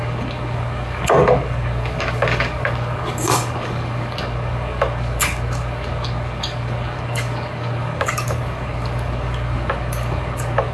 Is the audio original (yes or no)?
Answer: no